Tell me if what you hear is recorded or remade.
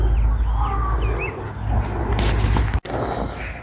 recorded